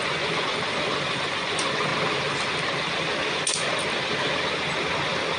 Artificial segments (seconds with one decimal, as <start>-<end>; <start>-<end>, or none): 0.0-0.5; 1.3-1.9; 3.3-3.7